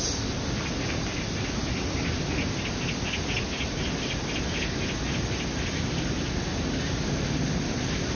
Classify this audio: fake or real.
real